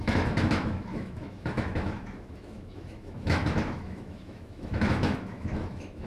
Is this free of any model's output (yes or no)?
no